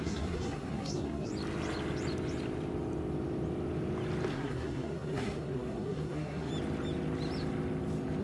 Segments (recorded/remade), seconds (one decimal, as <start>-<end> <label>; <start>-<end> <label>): 0.0-1.3 remade; 1.3-4.3 recorded; 4.3-6.5 remade; 6.5-8.2 recorded